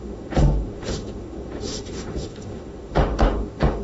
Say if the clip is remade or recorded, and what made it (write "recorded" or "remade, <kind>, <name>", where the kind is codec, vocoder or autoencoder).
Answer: remade, autoencoder, DAC-VAE